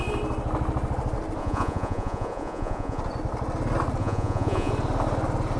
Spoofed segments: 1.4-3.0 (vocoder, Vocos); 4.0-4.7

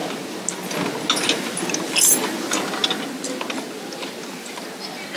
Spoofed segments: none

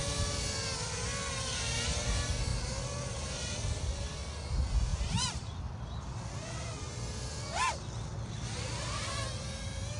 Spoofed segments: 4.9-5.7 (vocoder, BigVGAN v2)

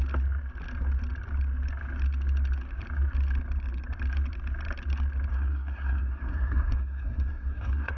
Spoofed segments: 5.3-8.0 (codec, SNAC)

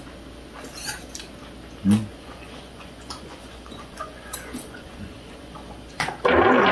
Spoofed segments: 2.1-6.1 (vocoder, Vocos)

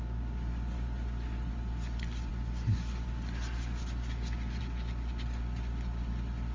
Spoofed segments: none

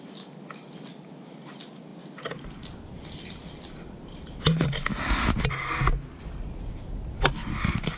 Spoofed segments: none